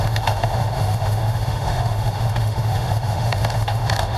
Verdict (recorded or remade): remade